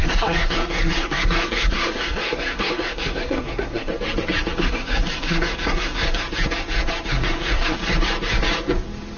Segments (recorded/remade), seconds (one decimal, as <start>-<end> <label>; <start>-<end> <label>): 0.0-3.9 remade; 3.9-4.6 recorded; 4.6-6.2 remade; 6.2-7.1 recorded; 7.1-7.8 remade; 7.8-9.2 recorded